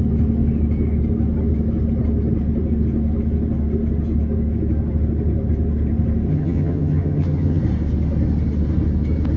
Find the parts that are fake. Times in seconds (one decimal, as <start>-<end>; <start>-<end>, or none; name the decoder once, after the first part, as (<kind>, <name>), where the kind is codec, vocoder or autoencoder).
6.3-7.6 (vocoder, HiFi-GAN)